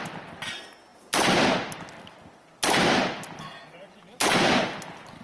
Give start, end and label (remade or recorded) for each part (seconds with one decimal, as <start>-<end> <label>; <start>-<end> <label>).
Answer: 0.0-5.2 recorded